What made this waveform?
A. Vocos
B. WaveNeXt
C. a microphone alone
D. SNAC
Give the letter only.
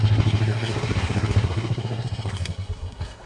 D